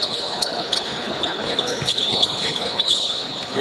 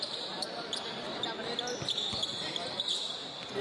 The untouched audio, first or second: second